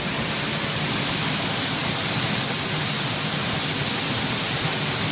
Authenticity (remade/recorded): recorded